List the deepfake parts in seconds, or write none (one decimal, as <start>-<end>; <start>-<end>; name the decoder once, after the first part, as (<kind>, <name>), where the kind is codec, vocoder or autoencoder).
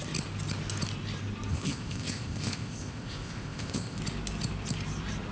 1.5-4.0 (codec, ZipCodec)